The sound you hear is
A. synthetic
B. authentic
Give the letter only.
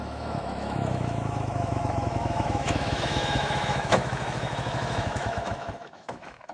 A